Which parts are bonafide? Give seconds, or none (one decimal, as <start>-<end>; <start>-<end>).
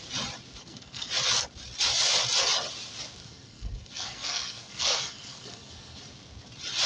0.0-0.6; 1.1-3.2; 6.0-6.9